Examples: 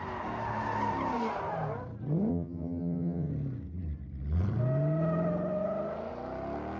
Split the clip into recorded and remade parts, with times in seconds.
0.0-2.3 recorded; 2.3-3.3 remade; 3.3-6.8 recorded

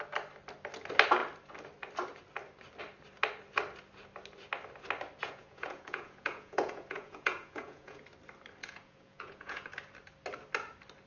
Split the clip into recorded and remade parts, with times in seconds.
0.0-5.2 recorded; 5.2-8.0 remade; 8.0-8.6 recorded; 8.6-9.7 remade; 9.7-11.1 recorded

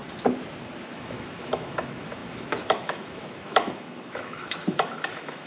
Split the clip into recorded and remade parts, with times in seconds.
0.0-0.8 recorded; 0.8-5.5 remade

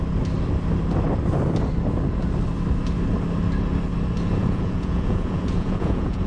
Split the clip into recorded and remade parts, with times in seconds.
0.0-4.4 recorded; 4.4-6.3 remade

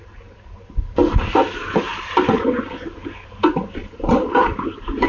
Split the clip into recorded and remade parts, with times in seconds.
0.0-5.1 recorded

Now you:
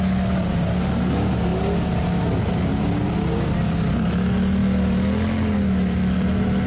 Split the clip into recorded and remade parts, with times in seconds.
0.0-6.7 recorded

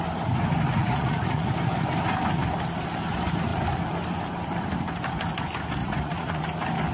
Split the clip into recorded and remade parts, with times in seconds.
0.0-0.8 recorded; 0.8-1.5 remade; 1.5-5.8 recorded; 5.8-6.4 remade; 6.4-6.9 recorded